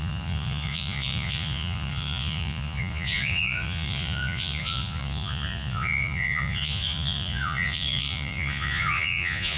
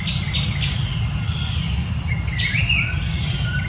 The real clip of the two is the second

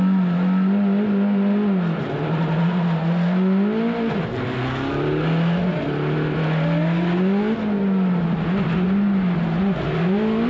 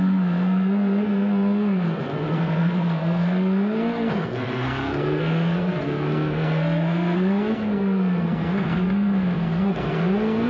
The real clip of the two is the first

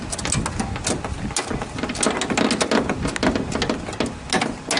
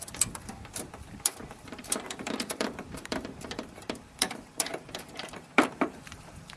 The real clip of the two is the first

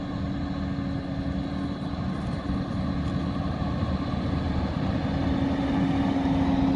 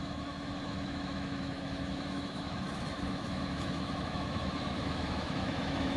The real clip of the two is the first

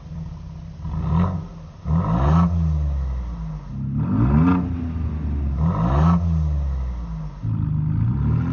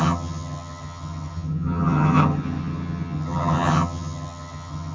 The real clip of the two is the first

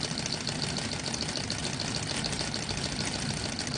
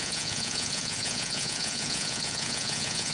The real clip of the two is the first